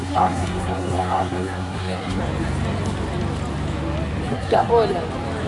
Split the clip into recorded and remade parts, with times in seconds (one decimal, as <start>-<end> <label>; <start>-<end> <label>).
0.0-2.2 remade; 2.2-4.3 recorded; 4.3-4.7 remade; 4.7-5.5 recorded